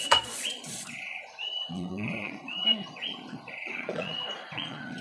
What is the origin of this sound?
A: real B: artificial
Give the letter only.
B